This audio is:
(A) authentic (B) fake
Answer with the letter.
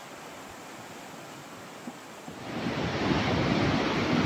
A